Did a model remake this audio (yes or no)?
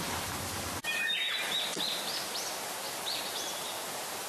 no